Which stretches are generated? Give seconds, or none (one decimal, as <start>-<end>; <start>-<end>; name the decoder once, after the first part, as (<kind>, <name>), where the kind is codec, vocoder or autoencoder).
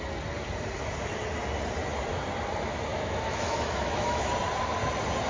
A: 2.9-4.3 (autoencoder, DAC-VAE)